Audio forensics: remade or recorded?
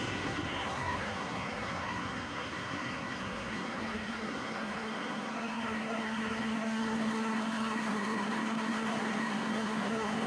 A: remade